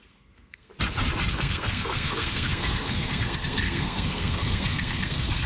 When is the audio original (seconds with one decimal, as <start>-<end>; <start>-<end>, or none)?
0.7-1.3